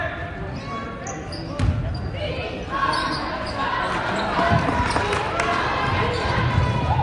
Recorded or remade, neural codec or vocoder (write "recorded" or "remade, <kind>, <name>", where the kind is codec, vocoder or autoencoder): recorded